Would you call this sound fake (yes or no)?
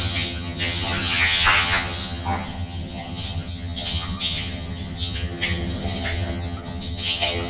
yes